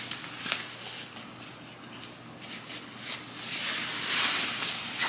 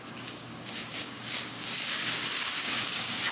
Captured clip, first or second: first